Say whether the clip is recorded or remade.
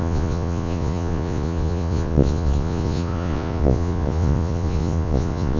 remade